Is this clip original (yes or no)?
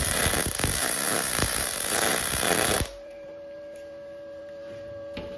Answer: no